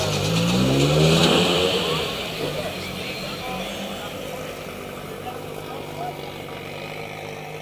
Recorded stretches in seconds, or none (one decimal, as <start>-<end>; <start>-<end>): 0.0-1.2; 2.1-7.6